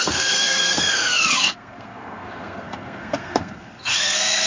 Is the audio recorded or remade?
remade